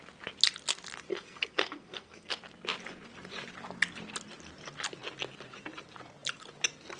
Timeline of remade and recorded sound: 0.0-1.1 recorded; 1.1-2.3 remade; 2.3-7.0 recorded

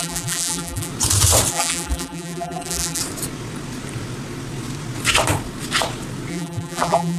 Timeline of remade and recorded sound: 0.0-0.9 remade; 0.9-1.5 recorded; 1.5-3.0 remade; 3.0-6.3 recorded; 6.3-7.2 remade

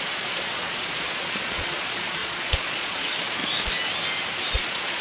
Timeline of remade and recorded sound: 0.0-3.4 remade; 3.4-4.6 recorded; 4.6-5.0 remade

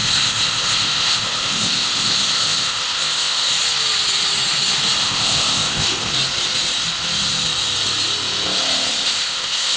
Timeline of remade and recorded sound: 0.0-3.5 remade; 3.5-5.0 recorded; 5.0-6.1 remade; 6.1-8.9 recorded; 8.9-9.8 remade

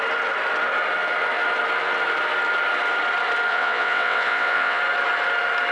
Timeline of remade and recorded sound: 0.0-3.5 recorded; 3.5-4.8 remade; 4.8-5.7 recorded

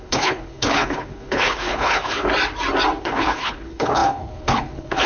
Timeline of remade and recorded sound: 0.0-2.3 remade; 2.3-3.0 recorded; 3.0-5.1 remade

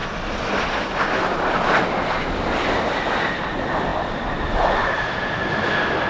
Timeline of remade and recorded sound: 0.0-6.1 recorded